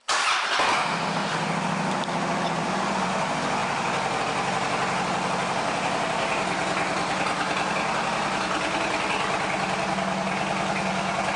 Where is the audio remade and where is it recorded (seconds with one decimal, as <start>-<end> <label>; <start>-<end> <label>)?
0.0-1.2 recorded; 1.2-3.1 remade; 3.1-11.4 recorded